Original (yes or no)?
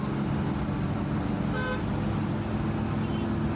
yes